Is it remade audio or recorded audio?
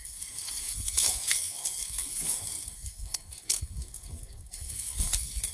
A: remade